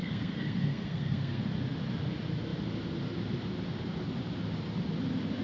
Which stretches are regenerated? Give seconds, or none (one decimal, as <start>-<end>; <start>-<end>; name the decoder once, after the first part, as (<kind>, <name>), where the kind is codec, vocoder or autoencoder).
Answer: 0.0-1.4 (codec, SNAC)